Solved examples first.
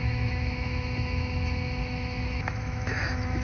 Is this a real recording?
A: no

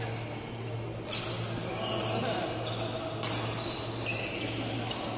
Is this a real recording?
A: yes